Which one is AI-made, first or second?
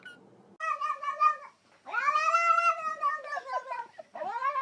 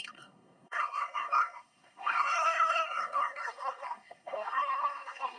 second